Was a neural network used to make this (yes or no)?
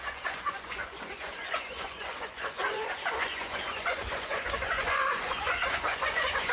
yes